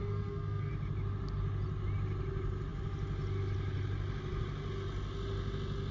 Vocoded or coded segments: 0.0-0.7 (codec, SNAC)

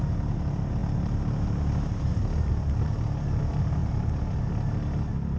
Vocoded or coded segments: none

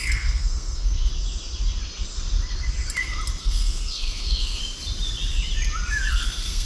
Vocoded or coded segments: 0.0-1.1 (codec, SNAC); 3.4-4.6; 6.1-6.7

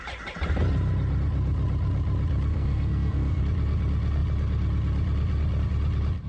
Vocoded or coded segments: 2.5-3.4 (codec, SNAC)